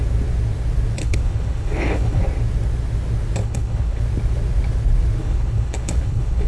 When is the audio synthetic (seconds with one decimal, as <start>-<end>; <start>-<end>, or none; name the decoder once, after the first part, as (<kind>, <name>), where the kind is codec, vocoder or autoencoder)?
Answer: 1.0-2.2 (codec, HILCodec); 3.4-4.0; 5.2-6.5

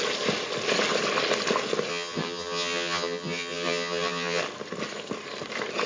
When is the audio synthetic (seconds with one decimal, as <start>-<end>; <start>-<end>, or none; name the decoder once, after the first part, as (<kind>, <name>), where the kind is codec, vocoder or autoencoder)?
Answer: 1.9-4.4 (vocoder, HiFi-GAN)

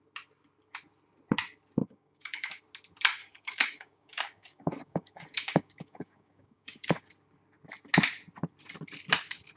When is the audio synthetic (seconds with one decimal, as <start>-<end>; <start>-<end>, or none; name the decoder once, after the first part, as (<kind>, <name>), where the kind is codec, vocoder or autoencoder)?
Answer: 1.8-2.6 (codec, DAC); 3.2-7.1